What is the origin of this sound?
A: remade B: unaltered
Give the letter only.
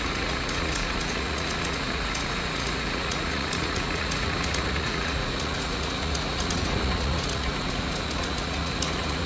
A